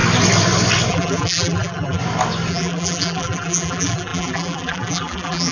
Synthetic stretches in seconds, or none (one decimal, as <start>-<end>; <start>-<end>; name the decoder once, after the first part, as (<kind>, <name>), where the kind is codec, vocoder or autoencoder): 0.9-2.0 (vocoder, BigVGAN v2); 2.5-5.5